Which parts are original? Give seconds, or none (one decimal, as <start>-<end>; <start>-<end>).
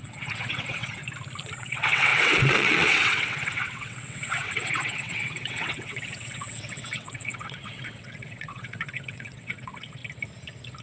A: 1.0-1.6; 10.0-10.8